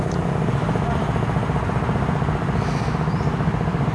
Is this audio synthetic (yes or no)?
no